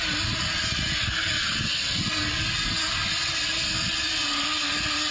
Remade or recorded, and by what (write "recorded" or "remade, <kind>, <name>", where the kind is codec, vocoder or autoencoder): recorded